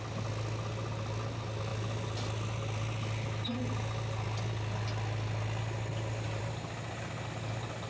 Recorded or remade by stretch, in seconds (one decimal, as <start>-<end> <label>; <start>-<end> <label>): 0.0-7.9 recorded